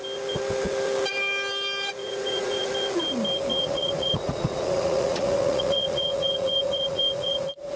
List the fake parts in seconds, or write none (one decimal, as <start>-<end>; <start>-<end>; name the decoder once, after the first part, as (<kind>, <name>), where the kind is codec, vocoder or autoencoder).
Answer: 2.0-2.7 (vocoder, Vocos); 3.5-7.8